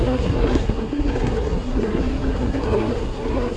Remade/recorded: remade